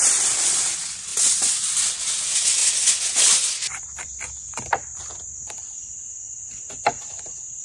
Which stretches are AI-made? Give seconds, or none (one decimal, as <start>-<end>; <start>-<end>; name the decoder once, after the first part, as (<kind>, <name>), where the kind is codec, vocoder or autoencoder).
none